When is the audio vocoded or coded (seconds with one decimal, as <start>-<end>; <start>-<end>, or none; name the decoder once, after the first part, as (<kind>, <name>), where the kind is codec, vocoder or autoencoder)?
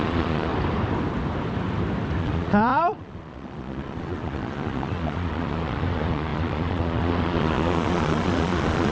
0.0-0.5 (vocoder, Vocos); 2.2-8.9